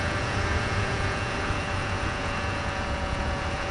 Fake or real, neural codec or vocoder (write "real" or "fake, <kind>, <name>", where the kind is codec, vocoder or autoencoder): fake, vocoder, Vocos